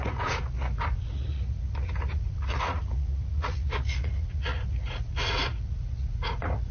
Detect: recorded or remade remade